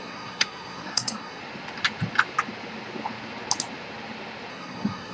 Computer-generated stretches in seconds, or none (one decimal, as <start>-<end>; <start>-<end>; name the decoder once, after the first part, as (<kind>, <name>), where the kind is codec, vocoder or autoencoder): 0.0-1.4 (codec, SNAC); 4.5-5.1